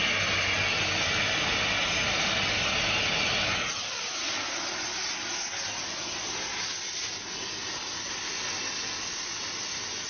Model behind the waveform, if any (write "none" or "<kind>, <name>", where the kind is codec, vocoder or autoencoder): none